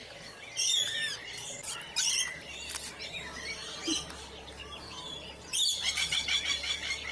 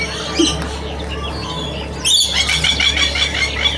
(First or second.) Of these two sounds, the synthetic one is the first